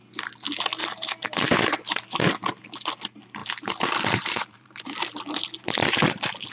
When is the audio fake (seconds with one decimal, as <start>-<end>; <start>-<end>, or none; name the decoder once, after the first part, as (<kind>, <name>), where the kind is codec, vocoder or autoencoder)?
0.8-2.3 (vocoder, BigVGAN v2); 3.4-6.5